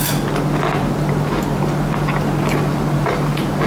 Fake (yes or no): no